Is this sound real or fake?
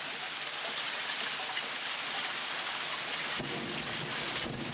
real